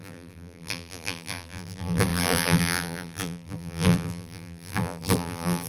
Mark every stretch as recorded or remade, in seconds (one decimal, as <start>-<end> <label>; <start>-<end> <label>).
0.0-5.7 remade